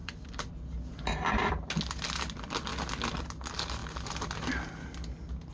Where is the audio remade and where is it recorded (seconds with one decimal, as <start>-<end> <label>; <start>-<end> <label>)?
0.0-0.5 remade; 0.5-0.9 recorded; 0.9-1.5 remade; 1.5-3.8 recorded; 3.8-4.3 remade; 4.3-5.5 recorded